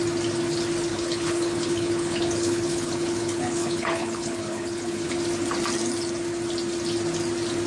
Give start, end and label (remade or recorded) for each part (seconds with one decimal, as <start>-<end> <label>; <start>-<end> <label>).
0.0-0.9 recorded; 0.9-5.1 remade; 5.1-7.7 recorded